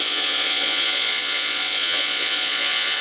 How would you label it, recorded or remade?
remade